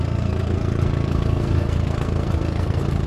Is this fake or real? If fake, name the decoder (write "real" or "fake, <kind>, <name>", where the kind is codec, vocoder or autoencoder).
fake, codec, SNAC